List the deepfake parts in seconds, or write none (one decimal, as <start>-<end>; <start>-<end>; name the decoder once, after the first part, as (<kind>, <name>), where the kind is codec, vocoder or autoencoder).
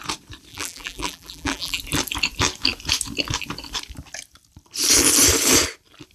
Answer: 0.5-1.8 (vocoder, BigVGAN v2)